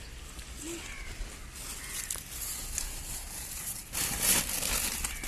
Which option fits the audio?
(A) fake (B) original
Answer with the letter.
B